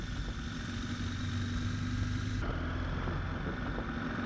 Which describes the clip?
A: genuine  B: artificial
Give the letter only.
A